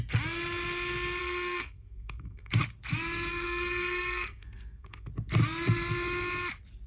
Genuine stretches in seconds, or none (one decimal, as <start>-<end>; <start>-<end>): 0.0-1.2; 2.5-3.3; 5.1-6.9